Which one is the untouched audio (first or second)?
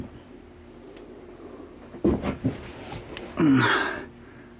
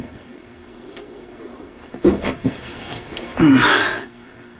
first